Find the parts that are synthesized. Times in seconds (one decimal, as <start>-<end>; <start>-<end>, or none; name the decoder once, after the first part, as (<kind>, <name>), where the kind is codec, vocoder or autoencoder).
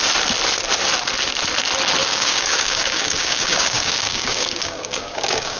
2.0-5.6 (codec, DAC)